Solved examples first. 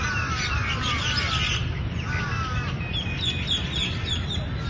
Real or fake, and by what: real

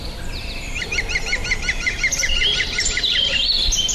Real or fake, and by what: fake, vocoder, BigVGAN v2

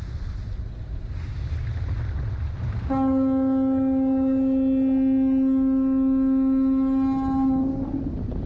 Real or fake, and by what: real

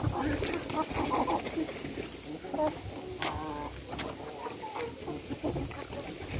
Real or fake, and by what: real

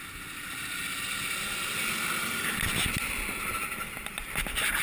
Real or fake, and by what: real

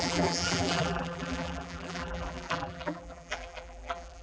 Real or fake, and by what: fake, vocoder, BigVGAN v2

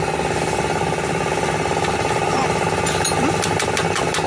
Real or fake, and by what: real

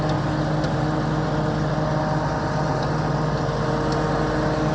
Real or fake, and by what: real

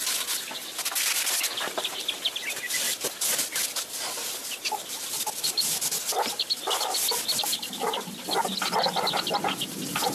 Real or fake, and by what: real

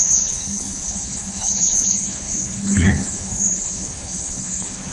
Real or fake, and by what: fake, codec, HILCodec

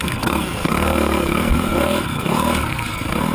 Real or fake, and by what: fake, codec, SNAC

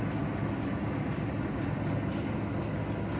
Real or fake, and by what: real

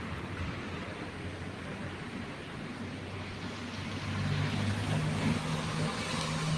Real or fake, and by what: real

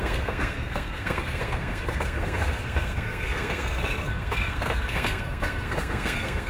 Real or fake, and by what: fake, codec, SNAC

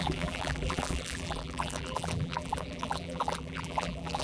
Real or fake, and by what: fake, vocoder, BigVGAN v2